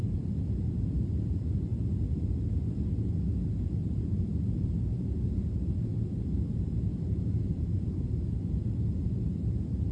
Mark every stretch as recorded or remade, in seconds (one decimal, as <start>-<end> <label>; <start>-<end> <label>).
0.0-1.7 remade; 1.7-3.4 recorded; 3.4-5.9 remade; 5.9-6.5 recorded; 6.5-9.9 remade